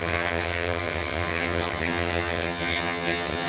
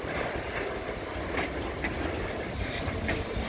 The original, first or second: second